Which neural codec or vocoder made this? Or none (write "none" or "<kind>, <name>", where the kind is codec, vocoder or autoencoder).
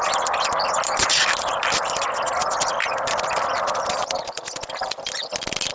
none